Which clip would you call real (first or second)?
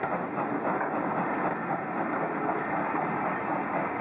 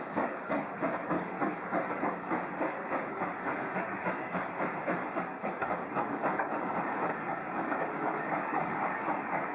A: first